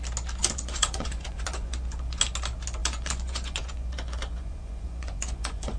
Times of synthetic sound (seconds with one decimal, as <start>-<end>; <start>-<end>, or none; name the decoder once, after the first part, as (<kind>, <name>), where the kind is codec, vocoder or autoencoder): 0.4-2.2 (vocoder, Vocos); 2.8-5.8